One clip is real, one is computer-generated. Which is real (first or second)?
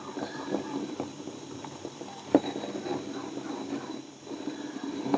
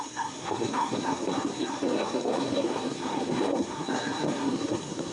first